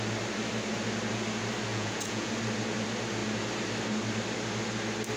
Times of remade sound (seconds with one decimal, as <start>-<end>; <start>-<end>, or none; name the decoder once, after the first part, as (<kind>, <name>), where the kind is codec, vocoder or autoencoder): 1.7-2.3 (vocoder, Vocos)